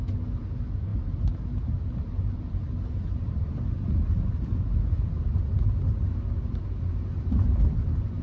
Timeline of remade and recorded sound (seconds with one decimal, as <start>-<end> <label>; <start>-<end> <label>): 0.0-8.2 recorded